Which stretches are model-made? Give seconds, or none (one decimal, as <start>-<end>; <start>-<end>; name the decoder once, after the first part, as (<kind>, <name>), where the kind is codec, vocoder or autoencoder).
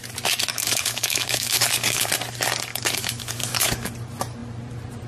0.5-2.1 (codec, DAC); 2.7-3.9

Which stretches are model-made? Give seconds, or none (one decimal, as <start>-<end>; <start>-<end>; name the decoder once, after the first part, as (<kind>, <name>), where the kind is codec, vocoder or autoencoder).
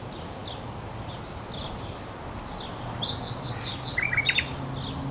none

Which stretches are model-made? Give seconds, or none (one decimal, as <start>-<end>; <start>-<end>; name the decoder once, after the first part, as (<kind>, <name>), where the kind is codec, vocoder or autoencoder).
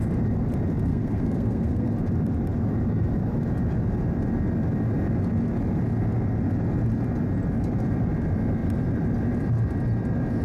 0.9-1.9 (codec, SNAC)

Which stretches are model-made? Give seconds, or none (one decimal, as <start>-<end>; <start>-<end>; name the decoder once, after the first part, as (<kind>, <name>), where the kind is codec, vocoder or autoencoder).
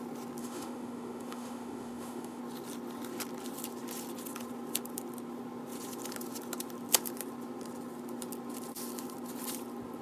0.4-2.4 (autoencoder, DAC-VAE)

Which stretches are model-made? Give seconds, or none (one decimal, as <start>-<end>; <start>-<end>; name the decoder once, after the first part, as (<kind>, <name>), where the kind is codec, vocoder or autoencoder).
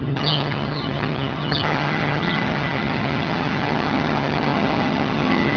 0.0-5.6 (vocoder, HiFi-GAN)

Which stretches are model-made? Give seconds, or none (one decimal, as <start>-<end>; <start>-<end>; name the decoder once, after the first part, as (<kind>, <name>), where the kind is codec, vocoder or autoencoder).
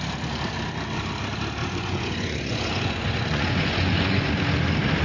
1.6-4.3 (vocoder, Vocos)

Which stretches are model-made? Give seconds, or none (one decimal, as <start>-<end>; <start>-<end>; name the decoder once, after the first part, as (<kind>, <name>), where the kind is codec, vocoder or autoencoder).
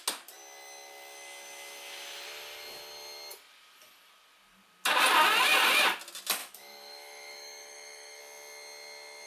6.4-8.2 (autoencoder, DAC-VAE)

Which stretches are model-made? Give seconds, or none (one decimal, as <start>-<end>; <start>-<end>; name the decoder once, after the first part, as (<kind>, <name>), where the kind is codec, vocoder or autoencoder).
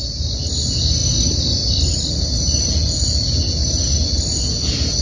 1.0-2.6 (vocoder, BigVGAN v2); 3.6-4.4